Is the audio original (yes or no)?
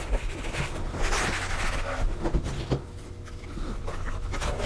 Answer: yes